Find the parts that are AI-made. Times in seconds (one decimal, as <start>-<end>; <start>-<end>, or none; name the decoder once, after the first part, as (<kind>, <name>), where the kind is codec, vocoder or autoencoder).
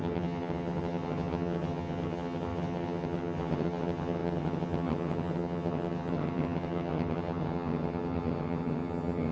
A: 0.0-9.3 (vocoder, HiFi-GAN)